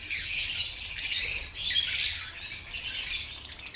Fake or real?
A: real